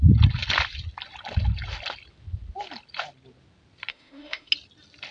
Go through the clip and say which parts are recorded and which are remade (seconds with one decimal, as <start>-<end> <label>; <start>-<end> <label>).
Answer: 0.0-3.9 recorded; 3.9-4.5 remade; 4.5-5.1 recorded